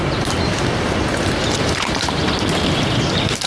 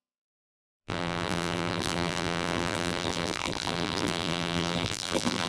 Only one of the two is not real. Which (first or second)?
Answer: second